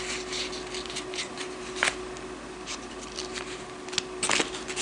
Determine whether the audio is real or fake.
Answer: real